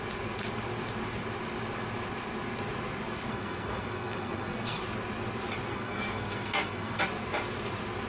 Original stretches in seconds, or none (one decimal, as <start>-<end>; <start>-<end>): 0.0-3.3; 4.8-5.7; 7.0-8.1